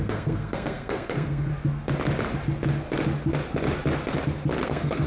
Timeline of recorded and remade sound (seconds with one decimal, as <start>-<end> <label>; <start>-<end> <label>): 0.0-1.5 remade; 1.5-4.6 recorded; 4.6-5.1 remade